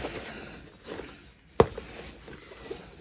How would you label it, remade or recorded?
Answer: recorded